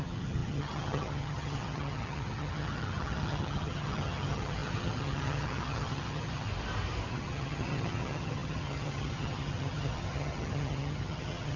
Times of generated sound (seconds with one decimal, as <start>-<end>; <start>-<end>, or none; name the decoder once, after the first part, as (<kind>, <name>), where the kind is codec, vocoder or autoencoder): 0.0-6.5 (vocoder, HiFi-GAN); 7.1-11.6